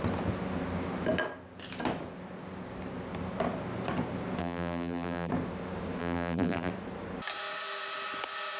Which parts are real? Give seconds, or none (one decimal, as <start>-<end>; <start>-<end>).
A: 0.0-4.4; 5.3-6.0; 6.7-8.6